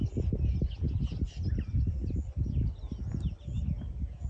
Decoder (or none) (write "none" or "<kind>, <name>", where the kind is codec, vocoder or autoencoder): none